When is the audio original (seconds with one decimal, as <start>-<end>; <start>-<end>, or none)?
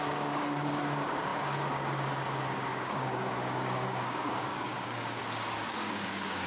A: 5.2-5.7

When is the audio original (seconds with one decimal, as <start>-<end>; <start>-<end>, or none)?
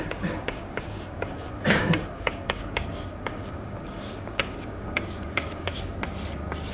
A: 5.7-6.7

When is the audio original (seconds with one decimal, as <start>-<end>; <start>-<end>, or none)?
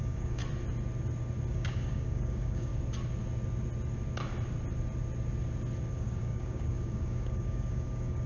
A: 0.4-1.5; 2.7-5.9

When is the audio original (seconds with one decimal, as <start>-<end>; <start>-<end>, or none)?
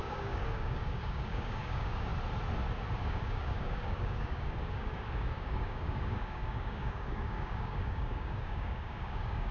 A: 2.1-3.0